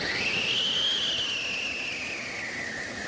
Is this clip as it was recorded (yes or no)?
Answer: yes